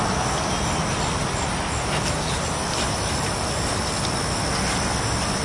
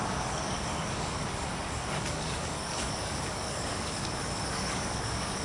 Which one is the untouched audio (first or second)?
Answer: first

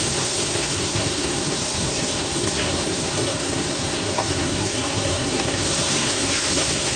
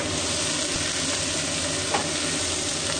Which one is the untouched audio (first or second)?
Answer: second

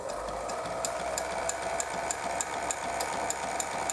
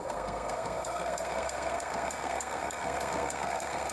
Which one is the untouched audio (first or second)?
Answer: first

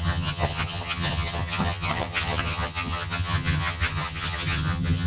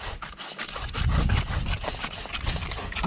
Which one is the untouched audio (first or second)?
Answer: second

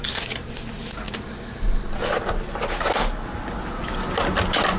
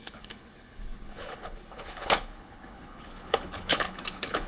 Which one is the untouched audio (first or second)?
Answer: first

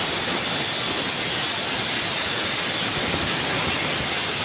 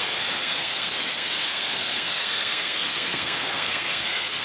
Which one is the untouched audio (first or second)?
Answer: first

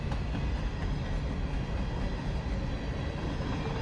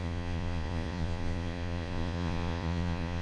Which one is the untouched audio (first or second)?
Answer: first